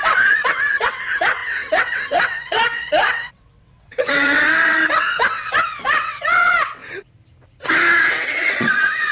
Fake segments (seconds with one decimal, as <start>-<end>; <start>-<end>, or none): 0.0-6.8; 8.0-9.1